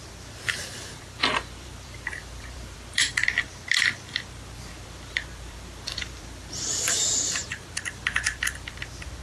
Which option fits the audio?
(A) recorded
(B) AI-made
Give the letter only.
B